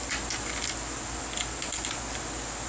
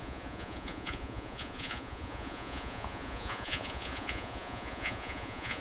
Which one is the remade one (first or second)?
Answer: second